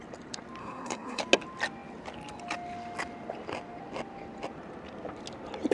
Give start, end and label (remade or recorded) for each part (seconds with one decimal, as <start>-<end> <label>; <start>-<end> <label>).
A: 0.0-0.6 recorded; 0.6-1.2 remade; 1.2-5.7 recorded